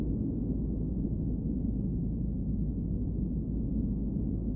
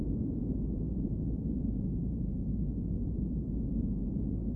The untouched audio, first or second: first